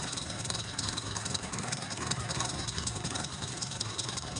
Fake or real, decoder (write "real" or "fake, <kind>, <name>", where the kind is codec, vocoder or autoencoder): fake, codec, SNAC